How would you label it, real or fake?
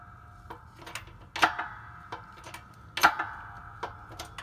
real